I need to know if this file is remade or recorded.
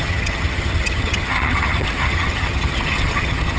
remade